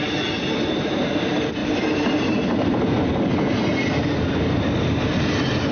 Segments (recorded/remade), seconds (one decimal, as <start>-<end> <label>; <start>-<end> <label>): 0.0-5.7 recorded